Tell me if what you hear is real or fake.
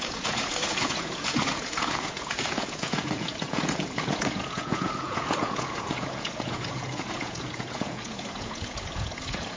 fake